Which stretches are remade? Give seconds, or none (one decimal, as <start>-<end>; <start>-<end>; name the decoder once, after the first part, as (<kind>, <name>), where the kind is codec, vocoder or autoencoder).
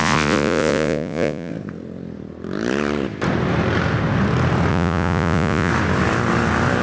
0.0-1.5 (vocoder, Vocos); 4.7-5.7